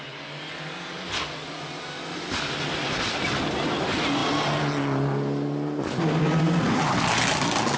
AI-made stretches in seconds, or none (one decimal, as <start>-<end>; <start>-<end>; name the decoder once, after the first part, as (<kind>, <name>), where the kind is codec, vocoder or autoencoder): none